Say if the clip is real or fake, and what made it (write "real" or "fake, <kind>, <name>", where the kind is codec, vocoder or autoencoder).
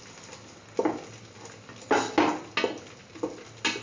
real